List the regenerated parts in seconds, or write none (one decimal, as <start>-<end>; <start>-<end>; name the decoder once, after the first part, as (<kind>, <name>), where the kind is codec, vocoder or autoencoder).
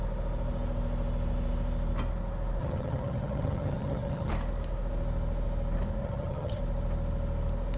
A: 2.6-4.3 (vocoder, HiFi-GAN); 6.0-6.6